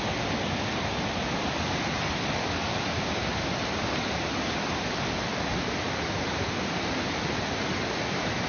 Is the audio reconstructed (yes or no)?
no